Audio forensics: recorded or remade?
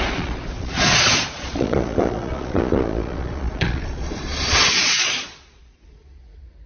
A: remade